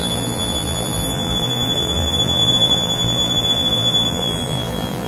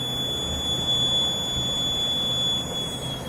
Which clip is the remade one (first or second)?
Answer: first